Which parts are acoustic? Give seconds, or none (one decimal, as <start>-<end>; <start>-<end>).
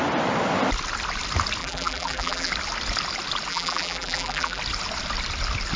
0.0-1.6; 2.5-3.5; 4.6-5.8